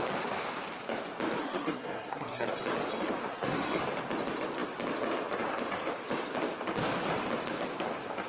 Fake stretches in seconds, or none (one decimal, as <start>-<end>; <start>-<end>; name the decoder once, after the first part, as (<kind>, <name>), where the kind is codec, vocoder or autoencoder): 1.4-2.5 (codec, SNAC); 3.3-3.8